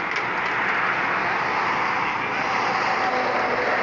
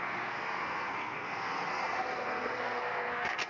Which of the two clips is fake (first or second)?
second